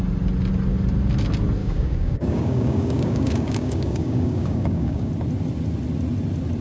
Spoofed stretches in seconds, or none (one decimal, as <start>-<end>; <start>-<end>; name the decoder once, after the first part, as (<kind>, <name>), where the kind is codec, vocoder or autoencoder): 1.6-5.1 (codec, DAC)